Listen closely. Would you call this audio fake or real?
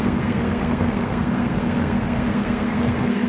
fake